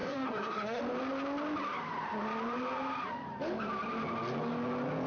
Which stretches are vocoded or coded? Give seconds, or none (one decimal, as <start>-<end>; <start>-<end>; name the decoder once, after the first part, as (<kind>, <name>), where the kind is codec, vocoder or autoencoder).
0.0-0.8 (codec, SNAC)